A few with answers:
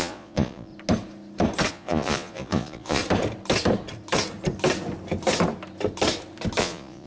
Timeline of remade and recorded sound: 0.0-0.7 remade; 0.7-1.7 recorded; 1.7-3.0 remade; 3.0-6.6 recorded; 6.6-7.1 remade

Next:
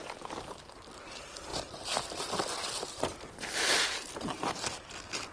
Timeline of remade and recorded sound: 0.0-5.3 recorded

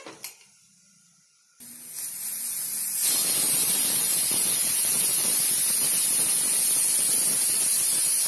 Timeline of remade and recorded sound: 0.0-3.2 recorded; 3.2-5.5 remade; 5.5-8.3 recorded

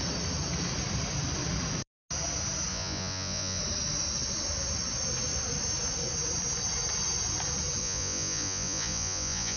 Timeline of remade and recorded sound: 0.0-2.7 recorded; 2.7-3.6 remade; 3.6-7.8 recorded; 7.8-9.6 remade

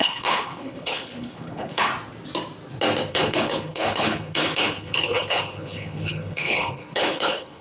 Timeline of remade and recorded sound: 0.0-1.9 remade; 1.9-3.1 recorded; 3.1-7.6 remade